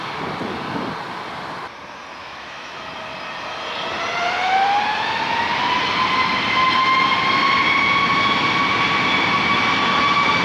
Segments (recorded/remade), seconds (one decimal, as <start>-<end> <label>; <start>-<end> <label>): 0.0-2.2 recorded; 2.2-2.9 remade; 2.9-10.4 recorded